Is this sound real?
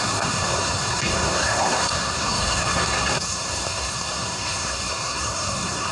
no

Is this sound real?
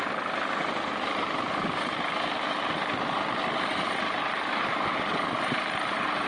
yes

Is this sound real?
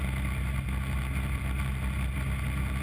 yes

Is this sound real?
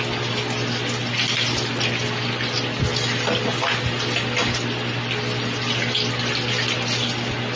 yes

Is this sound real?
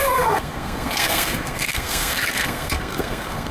no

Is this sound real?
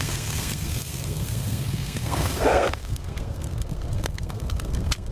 no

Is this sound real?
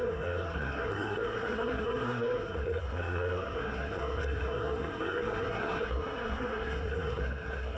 no